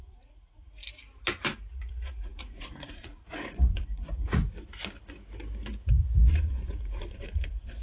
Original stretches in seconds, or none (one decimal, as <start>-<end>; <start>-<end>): 0.8-1.7; 4.4-6.3